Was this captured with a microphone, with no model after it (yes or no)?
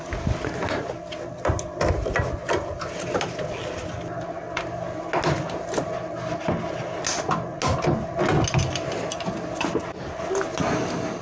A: yes